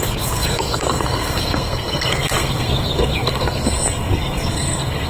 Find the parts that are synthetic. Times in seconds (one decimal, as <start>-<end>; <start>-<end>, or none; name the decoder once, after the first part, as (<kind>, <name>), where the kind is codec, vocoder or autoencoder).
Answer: 0.0-5.1 (codec, SNAC)